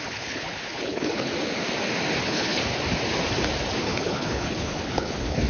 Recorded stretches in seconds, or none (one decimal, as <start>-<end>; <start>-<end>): 1.3-2.2; 2.6-3.8